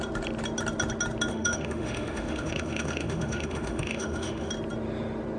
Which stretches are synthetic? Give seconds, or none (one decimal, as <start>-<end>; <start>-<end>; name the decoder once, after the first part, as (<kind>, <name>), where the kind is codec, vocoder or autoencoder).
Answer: 1.3-4.5 (autoencoder, DAC-VAE)

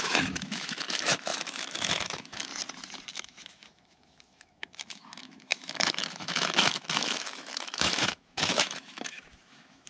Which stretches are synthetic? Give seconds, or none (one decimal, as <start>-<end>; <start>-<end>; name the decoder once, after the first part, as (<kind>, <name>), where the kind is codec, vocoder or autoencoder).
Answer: 0.0-2.5 (autoencoder, DAC-VAE); 3.1-9.9

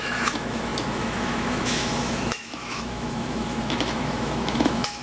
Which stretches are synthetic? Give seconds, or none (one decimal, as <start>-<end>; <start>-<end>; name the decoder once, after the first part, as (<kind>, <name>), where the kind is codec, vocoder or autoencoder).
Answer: 0.0-5.0 (autoencoder, DAC-VAE)

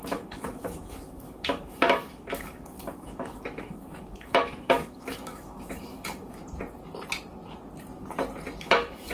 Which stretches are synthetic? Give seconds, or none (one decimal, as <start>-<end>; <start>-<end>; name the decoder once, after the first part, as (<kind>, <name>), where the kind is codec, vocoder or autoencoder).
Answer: 0.0-6.4 (autoencoder, DAC-VAE); 8.6-9.1

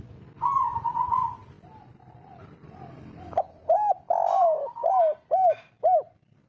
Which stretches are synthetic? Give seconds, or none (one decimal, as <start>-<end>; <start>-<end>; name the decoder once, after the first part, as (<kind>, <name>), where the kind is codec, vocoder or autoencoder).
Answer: none

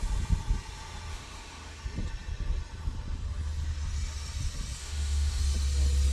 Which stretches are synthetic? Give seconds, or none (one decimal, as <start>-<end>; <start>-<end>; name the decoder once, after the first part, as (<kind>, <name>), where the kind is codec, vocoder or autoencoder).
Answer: 1.1-1.8 (autoencoder, DAC-VAE); 4.8-5.4

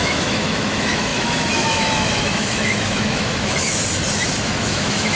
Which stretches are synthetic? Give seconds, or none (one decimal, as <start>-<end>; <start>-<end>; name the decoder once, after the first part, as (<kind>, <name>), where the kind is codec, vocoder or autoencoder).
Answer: 0.0-3.8 (autoencoder, DAC-VAE); 4.4-5.2

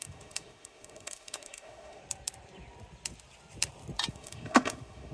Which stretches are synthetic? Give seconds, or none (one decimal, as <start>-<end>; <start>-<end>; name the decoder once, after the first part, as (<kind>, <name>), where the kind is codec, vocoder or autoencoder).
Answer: 0.0-2.0 (autoencoder, DAC-VAE); 4.1-5.1